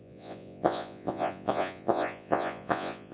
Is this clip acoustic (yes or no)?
no